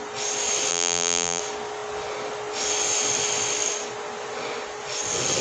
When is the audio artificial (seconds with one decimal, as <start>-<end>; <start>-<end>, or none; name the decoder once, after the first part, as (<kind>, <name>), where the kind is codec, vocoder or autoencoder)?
0.7-1.4 (vocoder, BigVGAN v2)